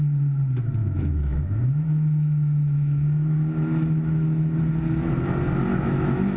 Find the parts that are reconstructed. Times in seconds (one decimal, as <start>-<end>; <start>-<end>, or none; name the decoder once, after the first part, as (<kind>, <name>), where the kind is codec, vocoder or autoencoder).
0.8-4.6 (autoencoder, DAC-VAE); 5.7-6.4